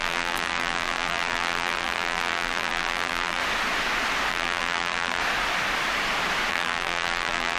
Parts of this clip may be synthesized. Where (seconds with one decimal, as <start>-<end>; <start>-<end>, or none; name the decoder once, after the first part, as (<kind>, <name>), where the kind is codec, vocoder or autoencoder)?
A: 0.0-3.4 (vocoder, BigVGAN v2); 4.3-5.2; 6.5-7.6